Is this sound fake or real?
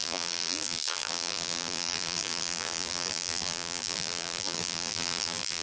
fake